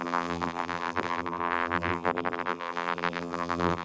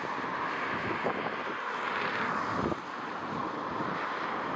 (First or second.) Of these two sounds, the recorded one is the second